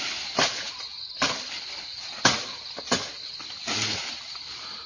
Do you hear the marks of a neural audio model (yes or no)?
no